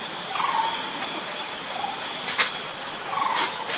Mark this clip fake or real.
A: fake